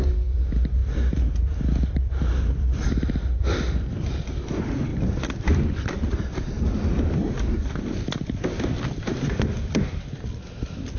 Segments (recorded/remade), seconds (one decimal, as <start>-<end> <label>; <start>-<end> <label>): 0.0-11.0 recorded

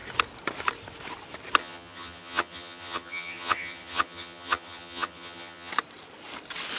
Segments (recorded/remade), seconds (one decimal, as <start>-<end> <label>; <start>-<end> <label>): 0.0-1.6 recorded; 1.6-5.7 remade; 5.7-6.8 recorded

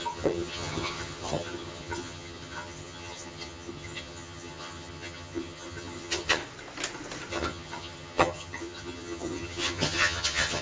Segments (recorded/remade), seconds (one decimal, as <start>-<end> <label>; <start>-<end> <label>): 0.0-6.4 remade; 6.4-7.3 recorded; 7.3-10.6 remade

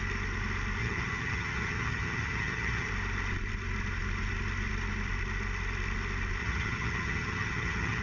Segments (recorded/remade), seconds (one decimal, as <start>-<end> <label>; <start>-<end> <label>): 0.0-0.8 recorded; 0.8-2.9 remade; 2.9-6.4 recorded; 6.4-8.0 remade

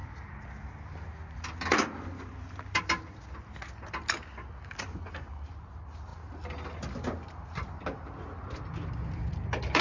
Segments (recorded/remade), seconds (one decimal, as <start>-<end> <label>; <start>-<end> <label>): 0.0-9.8 recorded

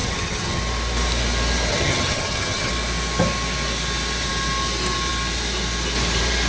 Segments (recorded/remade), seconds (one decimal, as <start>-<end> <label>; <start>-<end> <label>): 0.0-0.6 remade; 0.6-1.7 recorded; 1.7-2.7 remade; 2.7-6.5 recorded